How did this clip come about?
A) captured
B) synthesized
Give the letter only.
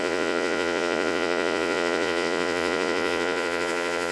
B